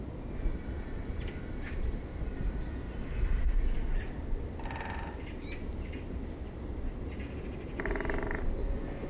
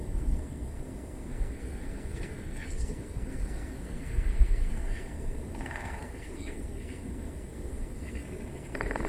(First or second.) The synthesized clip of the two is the second